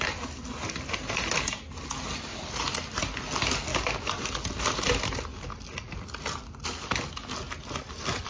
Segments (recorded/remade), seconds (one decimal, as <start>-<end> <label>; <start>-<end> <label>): 0.0-8.3 recorded